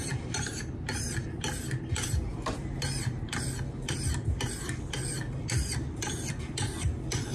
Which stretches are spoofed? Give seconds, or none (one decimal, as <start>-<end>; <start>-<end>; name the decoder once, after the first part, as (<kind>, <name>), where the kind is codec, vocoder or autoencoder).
0.0-0.5 (vocoder, BigVGAN v2); 2.3-3.3